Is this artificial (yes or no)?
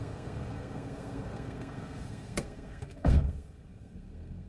yes